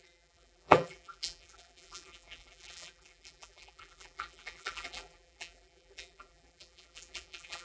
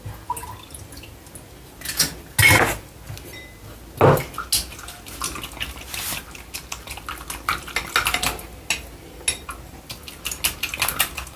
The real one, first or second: second